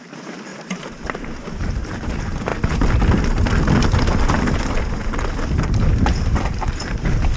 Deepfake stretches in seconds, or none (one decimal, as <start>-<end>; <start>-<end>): 0.0-2.5; 5.6-7.4